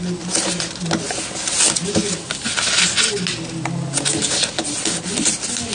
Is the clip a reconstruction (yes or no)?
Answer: no